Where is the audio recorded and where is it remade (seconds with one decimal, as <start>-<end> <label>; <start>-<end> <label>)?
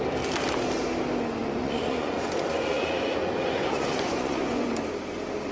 0.0-1.4 recorded; 1.4-4.7 remade; 4.7-5.5 recorded